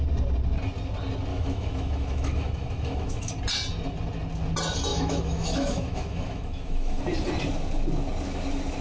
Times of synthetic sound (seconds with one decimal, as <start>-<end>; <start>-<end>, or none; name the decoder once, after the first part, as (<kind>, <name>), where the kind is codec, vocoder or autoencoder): 1.3-3.3 (autoencoder, DAC-VAE); 4.9-7.0